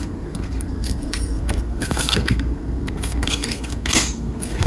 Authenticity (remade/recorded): remade